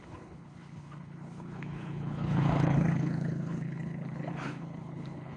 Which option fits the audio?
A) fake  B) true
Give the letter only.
A